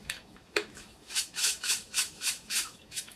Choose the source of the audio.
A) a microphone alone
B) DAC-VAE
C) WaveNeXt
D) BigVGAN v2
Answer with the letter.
B